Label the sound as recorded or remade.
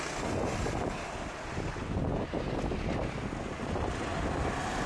recorded